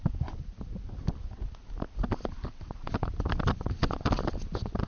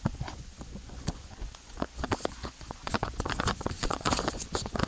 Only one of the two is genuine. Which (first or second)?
first